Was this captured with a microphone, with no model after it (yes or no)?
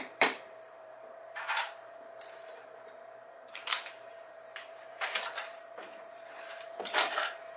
no